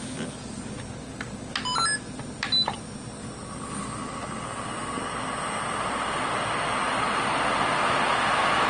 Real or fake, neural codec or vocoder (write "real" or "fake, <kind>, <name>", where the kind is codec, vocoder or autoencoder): real